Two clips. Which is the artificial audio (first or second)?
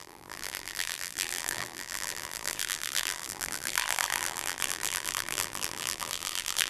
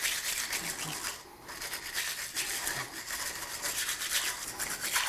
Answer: first